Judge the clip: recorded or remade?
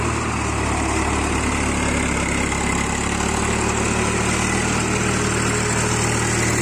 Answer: recorded